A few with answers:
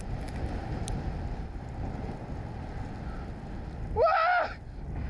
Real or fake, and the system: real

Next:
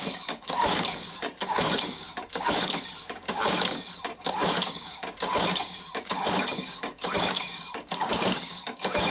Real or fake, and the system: fake, codec, DAC